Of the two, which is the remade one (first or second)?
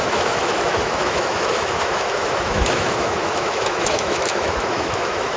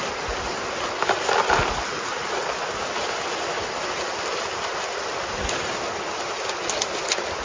first